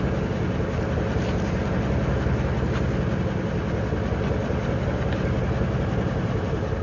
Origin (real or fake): real